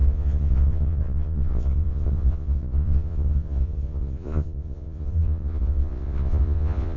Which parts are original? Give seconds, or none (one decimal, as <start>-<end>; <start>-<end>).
none